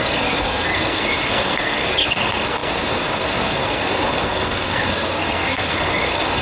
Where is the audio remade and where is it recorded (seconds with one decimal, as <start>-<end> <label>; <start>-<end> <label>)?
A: 0.0-6.4 remade